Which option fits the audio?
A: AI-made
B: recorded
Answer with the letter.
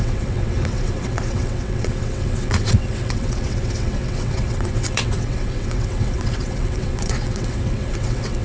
A